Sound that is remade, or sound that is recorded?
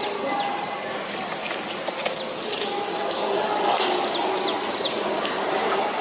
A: recorded